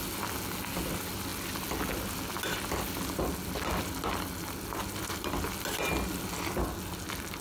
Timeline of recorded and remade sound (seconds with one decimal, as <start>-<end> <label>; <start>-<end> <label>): 0.0-7.4 recorded